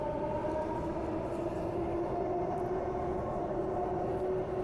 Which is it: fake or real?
real